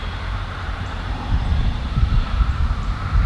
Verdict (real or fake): fake